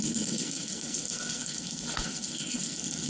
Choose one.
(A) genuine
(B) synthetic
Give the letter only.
B